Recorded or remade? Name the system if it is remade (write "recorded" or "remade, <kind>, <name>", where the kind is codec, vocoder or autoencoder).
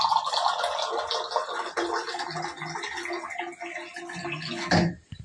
recorded